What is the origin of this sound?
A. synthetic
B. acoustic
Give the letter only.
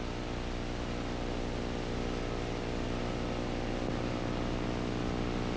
B